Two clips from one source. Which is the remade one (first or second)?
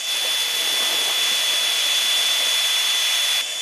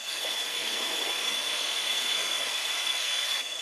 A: second